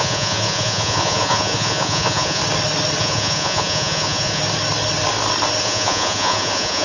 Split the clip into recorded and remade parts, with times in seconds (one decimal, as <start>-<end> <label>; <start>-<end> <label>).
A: 0.0-2.4 remade; 2.4-3.0 recorded; 3.0-4.4 remade; 4.4-5.6 recorded; 5.6-6.8 remade